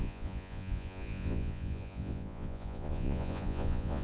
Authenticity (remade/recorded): remade